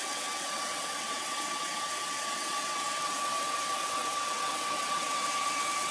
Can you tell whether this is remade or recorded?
remade